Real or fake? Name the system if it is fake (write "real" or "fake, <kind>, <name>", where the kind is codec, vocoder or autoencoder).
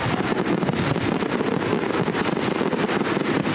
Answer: real